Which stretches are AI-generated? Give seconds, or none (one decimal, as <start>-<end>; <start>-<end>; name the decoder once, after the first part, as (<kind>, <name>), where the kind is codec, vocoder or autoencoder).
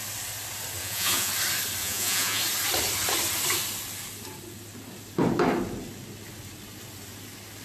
0.8-1.3 (vocoder, Vocos); 1.8-2.4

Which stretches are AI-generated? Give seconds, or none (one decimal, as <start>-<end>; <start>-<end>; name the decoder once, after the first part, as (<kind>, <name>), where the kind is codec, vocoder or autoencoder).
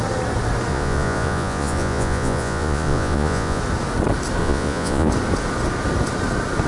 0.7-3.6 (vocoder, Vocos); 4.4-5.1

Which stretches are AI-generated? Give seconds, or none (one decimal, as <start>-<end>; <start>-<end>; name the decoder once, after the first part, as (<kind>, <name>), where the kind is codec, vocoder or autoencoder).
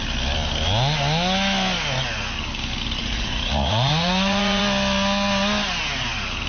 3.0-4.6 (vocoder, Vocos)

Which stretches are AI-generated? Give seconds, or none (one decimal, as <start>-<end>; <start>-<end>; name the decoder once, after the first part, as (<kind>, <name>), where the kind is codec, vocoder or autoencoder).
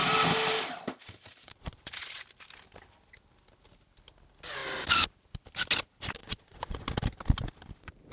1.4-2.2 (vocoder, Vocos); 6.2-6.8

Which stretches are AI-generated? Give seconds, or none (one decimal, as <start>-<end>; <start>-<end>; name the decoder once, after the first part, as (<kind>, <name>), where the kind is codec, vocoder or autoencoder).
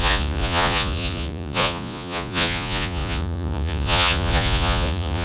0.0-5.2 (vocoder, Vocos)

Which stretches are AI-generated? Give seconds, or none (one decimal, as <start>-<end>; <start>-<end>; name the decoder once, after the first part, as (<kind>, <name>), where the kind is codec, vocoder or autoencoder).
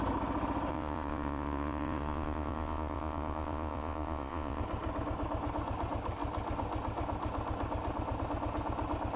0.7-4.6 (vocoder, Vocos)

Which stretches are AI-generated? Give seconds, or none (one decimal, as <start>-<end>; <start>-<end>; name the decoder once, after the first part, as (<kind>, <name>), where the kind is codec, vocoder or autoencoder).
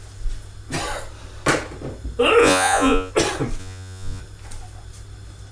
2.4-3.1 (vocoder, Vocos); 3.6-4.2